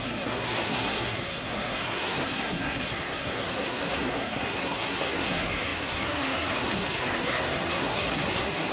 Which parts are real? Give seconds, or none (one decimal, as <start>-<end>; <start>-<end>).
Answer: none